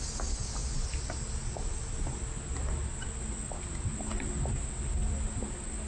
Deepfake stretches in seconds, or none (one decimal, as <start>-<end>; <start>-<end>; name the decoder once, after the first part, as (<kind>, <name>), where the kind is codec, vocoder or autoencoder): none